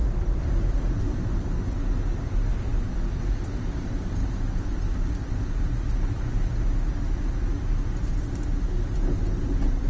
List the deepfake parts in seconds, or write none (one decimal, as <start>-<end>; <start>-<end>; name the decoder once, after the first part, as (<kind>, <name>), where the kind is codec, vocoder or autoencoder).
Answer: 0.0-0.8 (vocoder, BigVGAN v2); 2.7-3.2